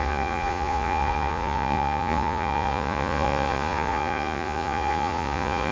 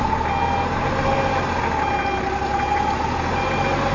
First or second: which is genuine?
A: second